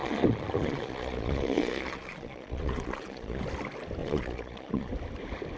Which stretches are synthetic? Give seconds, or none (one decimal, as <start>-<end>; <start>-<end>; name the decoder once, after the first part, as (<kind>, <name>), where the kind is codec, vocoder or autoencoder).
0.0-3.4 (vocoder, Vocos); 4.0-4.9